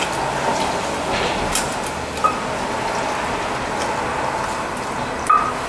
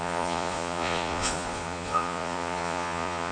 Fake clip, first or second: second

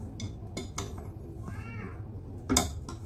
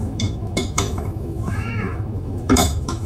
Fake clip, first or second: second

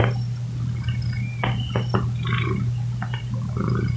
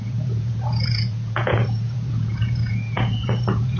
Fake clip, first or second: second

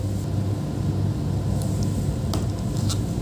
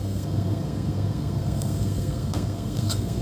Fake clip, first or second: second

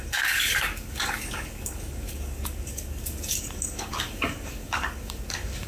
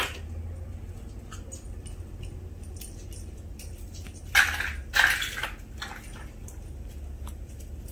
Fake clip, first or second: first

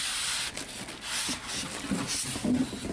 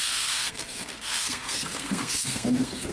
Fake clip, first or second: second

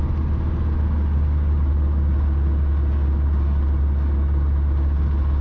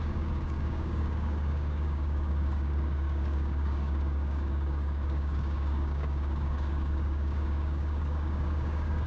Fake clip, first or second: second